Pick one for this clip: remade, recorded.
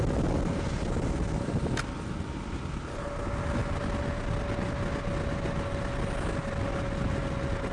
recorded